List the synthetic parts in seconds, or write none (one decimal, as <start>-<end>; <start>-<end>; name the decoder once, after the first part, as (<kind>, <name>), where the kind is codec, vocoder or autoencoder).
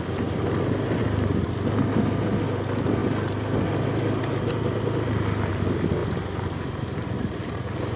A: none